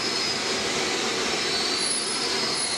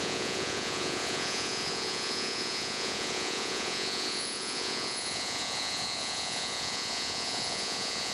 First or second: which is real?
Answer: first